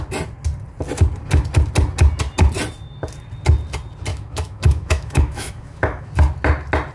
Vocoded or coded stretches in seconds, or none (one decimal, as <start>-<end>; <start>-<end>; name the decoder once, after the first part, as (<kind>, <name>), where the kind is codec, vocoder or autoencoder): 4.1-6.1 (autoencoder, DAC-VAE)

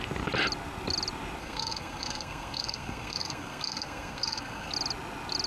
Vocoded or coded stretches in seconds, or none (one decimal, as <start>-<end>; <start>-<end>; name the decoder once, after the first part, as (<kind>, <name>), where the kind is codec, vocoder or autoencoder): 1.4-4.7 (codec, SNAC)